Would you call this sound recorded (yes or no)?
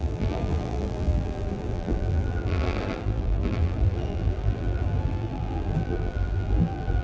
no